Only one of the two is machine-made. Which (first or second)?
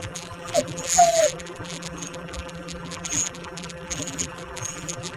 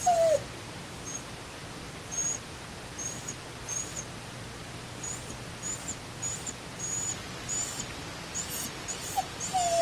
first